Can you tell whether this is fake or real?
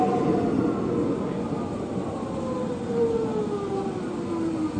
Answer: real